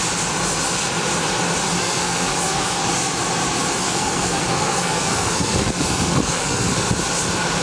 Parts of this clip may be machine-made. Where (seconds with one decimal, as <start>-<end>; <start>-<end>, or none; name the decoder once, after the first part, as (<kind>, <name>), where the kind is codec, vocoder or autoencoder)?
1.8-2.8 (codec, SNAC); 3.8-6.9